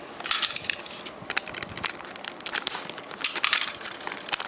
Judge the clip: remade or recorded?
recorded